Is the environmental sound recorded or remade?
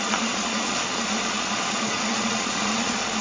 remade